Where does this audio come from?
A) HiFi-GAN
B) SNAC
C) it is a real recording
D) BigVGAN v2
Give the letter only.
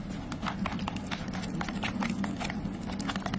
C